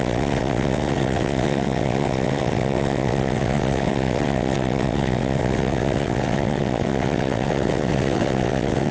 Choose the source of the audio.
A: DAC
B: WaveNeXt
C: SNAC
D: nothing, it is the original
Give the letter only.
B